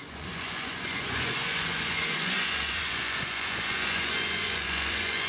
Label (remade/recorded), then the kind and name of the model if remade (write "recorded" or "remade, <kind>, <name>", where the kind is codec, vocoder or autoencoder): remade, vocoder, Vocos